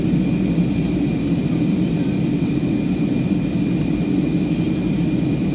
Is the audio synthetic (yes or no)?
no